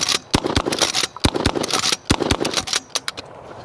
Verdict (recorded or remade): recorded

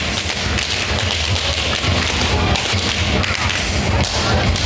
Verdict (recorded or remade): recorded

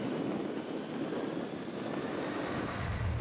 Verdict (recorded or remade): recorded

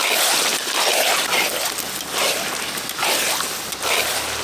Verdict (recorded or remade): recorded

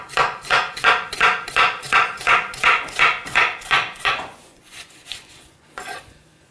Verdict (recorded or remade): remade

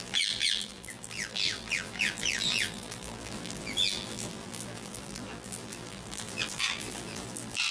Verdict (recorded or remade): remade